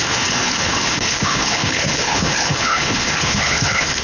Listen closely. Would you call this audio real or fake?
fake